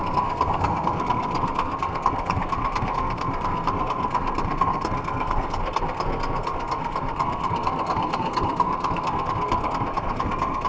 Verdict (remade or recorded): remade